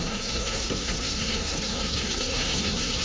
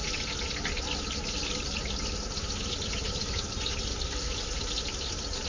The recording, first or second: second